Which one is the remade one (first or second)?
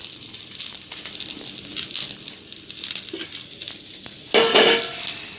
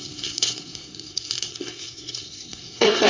second